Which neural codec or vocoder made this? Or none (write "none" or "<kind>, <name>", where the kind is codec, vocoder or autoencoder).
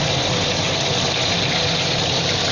none